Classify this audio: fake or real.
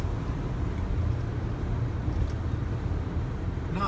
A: real